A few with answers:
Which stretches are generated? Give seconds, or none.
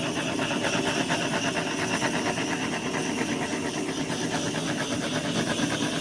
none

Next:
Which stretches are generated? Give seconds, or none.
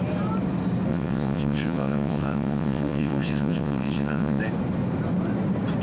0.9-4.4 (vocoder, WaveNeXt)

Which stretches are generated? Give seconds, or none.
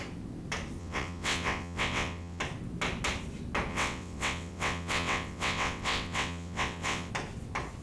0.8-2.4 (vocoder, WaveNeXt); 3.7-7.1